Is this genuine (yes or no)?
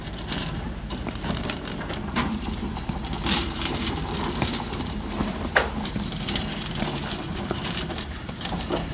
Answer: no